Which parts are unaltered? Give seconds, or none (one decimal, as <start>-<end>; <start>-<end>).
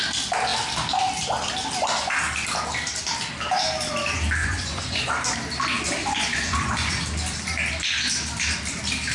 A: 0.0-4.4; 5.1-6.0; 7.0-9.1